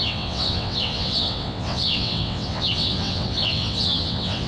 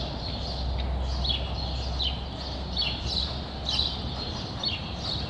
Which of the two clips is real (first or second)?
second